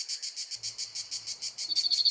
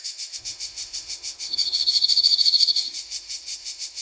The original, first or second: first